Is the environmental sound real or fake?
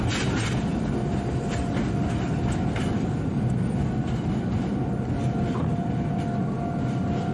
real